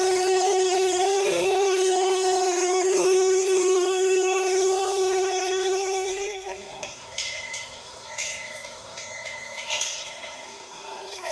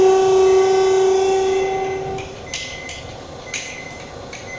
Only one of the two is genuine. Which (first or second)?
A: second